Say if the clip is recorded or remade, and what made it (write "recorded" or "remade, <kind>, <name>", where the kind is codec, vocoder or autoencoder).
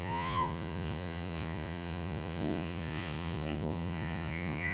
remade, vocoder, Vocos